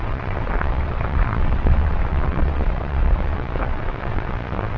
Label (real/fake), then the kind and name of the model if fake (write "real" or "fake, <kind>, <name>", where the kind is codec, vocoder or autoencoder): fake, vocoder, WaveNeXt